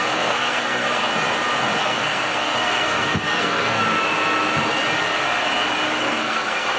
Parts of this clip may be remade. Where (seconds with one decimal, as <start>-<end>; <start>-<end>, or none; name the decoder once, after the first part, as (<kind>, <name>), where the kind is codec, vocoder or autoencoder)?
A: 0.0-1.1 (codec, SNAC); 1.8-3.8; 6.0-6.8